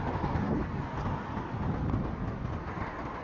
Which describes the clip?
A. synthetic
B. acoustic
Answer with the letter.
B